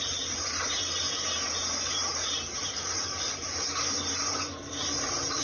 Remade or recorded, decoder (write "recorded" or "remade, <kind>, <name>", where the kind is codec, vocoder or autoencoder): remade, vocoder, BigVGAN v2